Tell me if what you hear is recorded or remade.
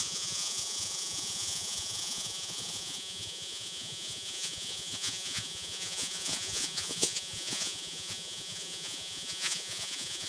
remade